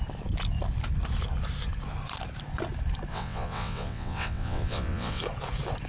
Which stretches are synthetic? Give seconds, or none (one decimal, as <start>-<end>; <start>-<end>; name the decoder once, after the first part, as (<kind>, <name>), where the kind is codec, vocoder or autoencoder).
3.1-5.2 (vocoder, WaveNeXt)